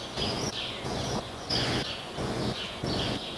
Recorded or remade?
remade